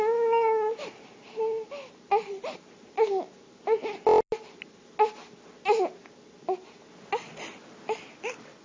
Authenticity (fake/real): real